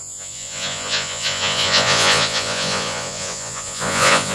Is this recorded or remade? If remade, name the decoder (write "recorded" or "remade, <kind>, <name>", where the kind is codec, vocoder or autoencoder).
remade, vocoder, Vocos